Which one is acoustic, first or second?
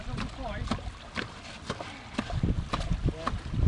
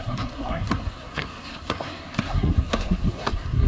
first